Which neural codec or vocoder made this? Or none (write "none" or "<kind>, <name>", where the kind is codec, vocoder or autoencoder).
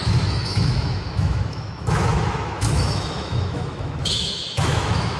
autoencoder, DAC-VAE